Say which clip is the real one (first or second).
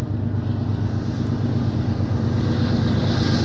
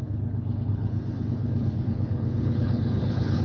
first